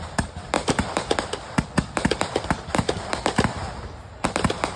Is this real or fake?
fake